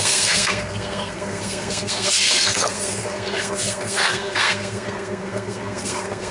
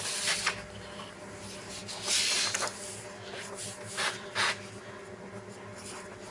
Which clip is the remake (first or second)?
first